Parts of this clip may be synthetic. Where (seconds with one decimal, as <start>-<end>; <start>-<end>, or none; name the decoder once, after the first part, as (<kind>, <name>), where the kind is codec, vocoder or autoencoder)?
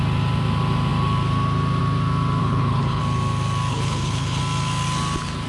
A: 2.4-3.0 (codec, HILCodec); 3.7-4.4